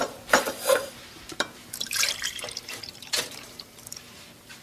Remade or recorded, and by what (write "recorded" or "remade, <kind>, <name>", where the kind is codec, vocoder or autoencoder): remade, vocoder, BigVGAN v2